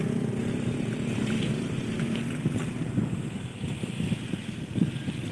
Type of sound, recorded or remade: remade